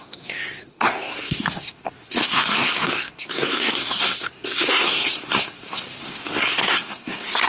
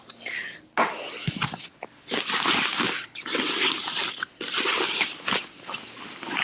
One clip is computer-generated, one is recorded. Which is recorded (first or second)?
second